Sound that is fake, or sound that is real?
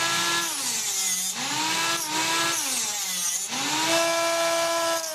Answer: real